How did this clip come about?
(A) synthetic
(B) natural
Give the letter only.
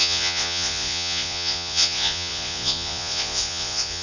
A